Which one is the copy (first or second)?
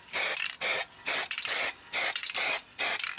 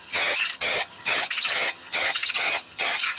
second